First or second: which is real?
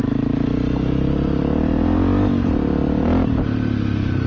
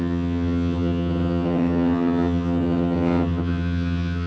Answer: first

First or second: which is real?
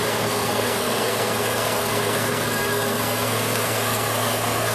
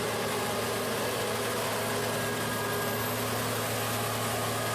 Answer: second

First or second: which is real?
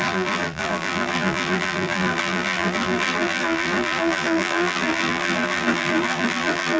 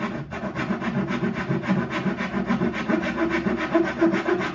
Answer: second